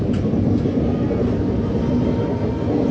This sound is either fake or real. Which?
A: real